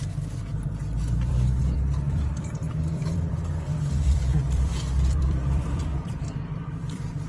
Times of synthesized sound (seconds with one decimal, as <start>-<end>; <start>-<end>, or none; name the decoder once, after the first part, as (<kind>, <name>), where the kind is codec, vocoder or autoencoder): 0.0-7.3 (vocoder, BigVGAN v2)